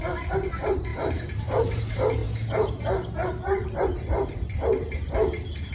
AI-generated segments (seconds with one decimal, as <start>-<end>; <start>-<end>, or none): 0.9-1.8